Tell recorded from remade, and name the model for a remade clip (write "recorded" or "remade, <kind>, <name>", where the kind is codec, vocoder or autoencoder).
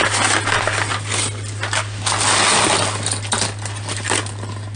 recorded